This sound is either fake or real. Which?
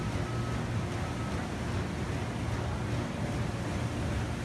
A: real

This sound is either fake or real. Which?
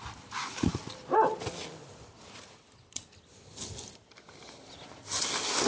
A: real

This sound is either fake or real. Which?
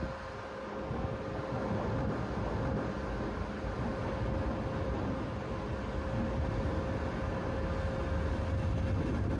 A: real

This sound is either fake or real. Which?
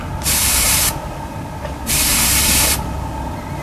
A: real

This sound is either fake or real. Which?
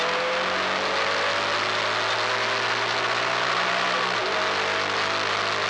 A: real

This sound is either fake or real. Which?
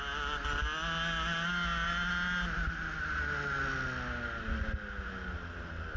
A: real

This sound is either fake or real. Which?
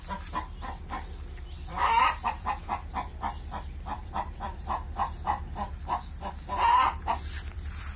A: fake